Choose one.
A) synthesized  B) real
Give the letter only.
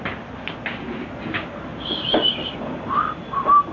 B